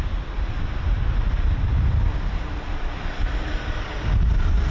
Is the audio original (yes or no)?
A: yes